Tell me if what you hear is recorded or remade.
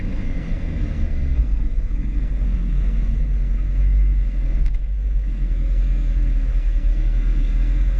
remade